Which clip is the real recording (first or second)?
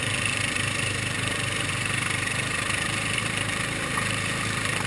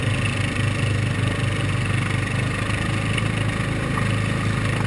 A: second